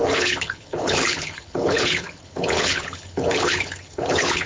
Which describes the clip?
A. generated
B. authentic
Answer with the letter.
A